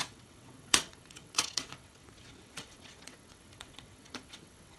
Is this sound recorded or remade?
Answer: remade